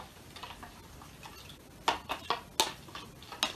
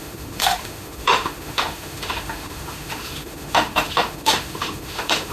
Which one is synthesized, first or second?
second